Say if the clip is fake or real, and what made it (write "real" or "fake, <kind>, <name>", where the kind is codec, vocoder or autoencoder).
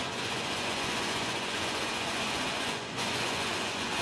fake, vocoder, Vocos